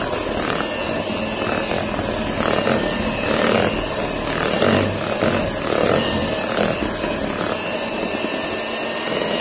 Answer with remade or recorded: recorded